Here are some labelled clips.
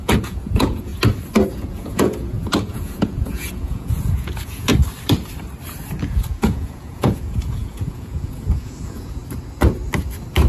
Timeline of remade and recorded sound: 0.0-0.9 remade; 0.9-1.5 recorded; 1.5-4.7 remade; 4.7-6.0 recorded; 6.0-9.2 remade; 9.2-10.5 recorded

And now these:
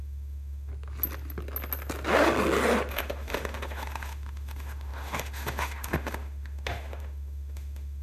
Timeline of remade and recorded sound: 0.0-0.7 remade; 0.7-2.9 recorded; 2.9-8.0 remade

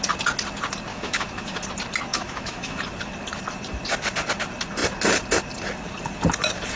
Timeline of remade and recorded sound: 0.0-0.9 recorded; 0.9-1.6 remade; 1.6-2.1 recorded; 2.1-2.8 remade; 2.8-6.8 recorded

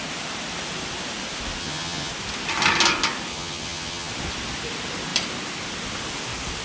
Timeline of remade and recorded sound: 0.0-1.6 recorded; 1.6-2.1 remade; 2.1-3.3 recorded; 3.3-4.1 remade; 4.1-6.6 recorded

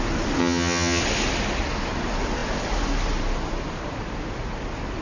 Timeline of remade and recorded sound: 0.0-0.4 recorded; 0.4-1.0 remade; 1.0-5.0 recorded

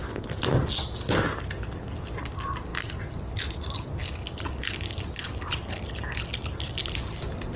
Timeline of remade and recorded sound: 0.0-7.6 recorded

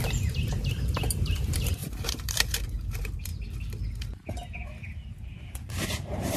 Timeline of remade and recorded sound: 0.0-3.3 remade; 3.3-5.4 recorded; 5.4-6.4 remade

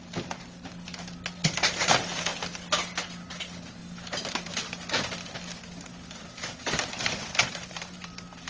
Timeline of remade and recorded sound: 0.0-3.8 recorded; 3.8-4.5 remade; 4.5-7.4 recorded; 7.4-8.5 remade